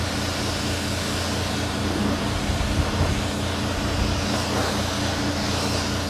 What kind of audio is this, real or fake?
real